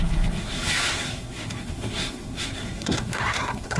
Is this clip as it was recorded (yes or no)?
no